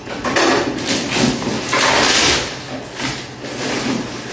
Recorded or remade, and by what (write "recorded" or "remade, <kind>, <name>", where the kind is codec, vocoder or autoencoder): recorded